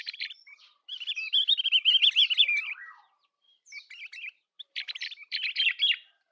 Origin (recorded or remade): remade